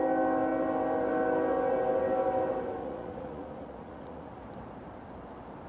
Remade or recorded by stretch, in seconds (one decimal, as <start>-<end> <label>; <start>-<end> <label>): 0.0-2.8 recorded; 2.8-4.4 remade; 4.4-5.7 recorded

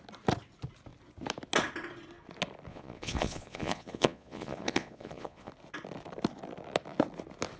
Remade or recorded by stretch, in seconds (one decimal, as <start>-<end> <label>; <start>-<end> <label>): 0.0-2.7 recorded; 2.7-5.5 remade; 5.5-7.6 recorded

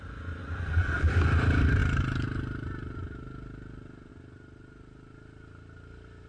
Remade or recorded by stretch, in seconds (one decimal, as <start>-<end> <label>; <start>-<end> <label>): 0.0-0.4 recorded; 0.4-1.1 remade; 1.1-6.3 recorded

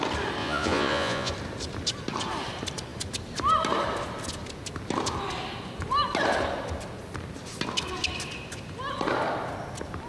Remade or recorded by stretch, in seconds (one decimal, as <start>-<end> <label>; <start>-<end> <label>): 0.0-0.4 recorded; 0.4-1.3 remade; 1.3-10.1 recorded

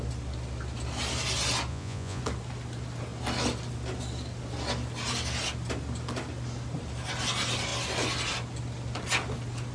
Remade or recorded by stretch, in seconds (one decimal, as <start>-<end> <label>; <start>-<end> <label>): 0.0-1.7 recorded; 1.7-2.2 remade; 2.2-9.7 recorded

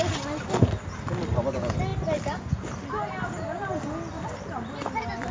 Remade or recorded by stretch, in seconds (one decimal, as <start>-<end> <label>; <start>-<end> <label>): 0.0-5.3 recorded

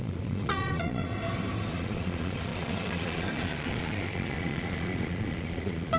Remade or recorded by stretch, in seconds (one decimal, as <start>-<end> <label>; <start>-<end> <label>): 0.0-1.1 remade; 1.1-1.7 recorded; 1.7-6.0 remade